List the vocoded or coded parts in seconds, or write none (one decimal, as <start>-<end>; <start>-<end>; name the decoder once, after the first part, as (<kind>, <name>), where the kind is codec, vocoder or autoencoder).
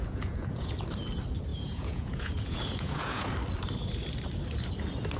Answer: 0.0-0.7 (vocoder, Vocos); 1.5-3.3